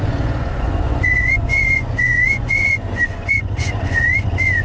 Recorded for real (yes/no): no